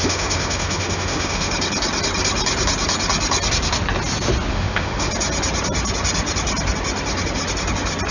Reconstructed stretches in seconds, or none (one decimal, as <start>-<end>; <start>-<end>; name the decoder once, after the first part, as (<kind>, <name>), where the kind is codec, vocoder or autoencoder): 0.0-1.5 (autoencoder, DAC-VAE); 4.5-5.1